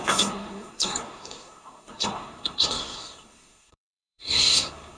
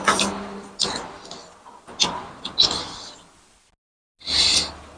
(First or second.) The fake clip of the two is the first